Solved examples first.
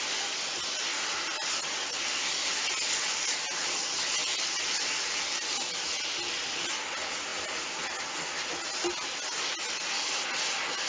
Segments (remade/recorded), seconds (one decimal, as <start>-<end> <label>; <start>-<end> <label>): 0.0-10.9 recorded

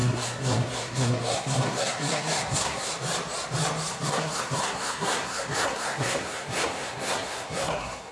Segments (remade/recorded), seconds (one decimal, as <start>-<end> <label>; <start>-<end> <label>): 0.0-2.9 remade; 2.9-3.9 recorded; 3.9-8.1 remade

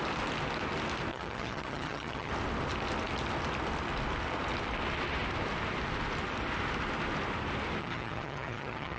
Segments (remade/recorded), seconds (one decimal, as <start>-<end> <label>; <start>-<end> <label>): 0.0-1.1 recorded; 1.1-2.3 remade; 2.3-7.8 recorded; 7.8-9.0 remade

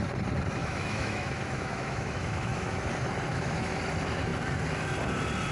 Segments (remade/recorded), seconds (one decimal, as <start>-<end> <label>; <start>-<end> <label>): 0.0-0.6 recorded; 0.6-2.9 remade; 2.9-3.3 recorded; 3.3-3.8 remade; 3.8-5.5 recorded